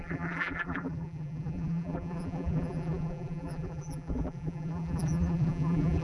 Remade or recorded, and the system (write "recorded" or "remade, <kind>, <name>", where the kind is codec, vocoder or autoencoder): remade, vocoder, BigVGAN v2